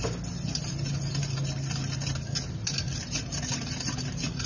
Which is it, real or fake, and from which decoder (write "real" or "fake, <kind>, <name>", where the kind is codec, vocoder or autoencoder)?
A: real